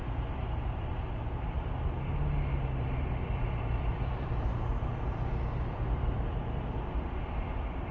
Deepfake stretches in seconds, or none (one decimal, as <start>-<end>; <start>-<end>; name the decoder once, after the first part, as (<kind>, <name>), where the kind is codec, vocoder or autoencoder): 0.0-7.9 (vocoder, BigVGAN v2)